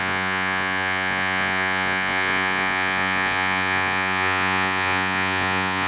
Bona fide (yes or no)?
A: no